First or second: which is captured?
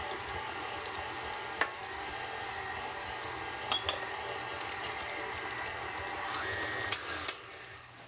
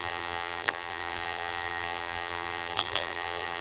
first